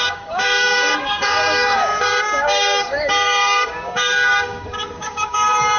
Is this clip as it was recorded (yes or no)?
no